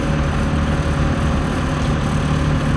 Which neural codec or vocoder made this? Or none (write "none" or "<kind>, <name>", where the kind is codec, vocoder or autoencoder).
none